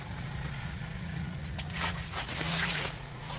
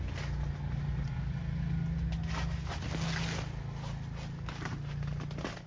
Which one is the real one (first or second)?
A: second